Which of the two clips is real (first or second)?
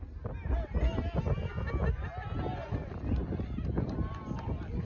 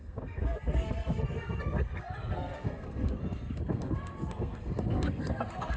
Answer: first